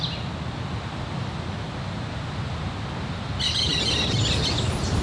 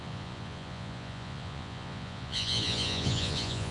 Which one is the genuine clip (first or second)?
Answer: first